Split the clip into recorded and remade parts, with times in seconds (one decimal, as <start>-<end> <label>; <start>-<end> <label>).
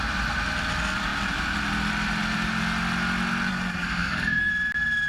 0.0-3.5 recorded; 3.5-4.5 remade; 4.5-5.1 recorded